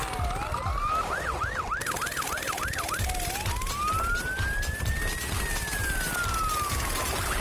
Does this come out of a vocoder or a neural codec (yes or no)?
no